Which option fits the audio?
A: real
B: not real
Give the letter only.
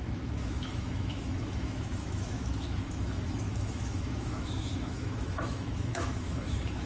B